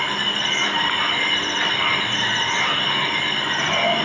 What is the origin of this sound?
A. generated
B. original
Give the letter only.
B